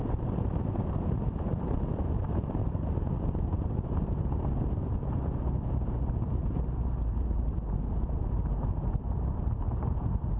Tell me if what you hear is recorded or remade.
remade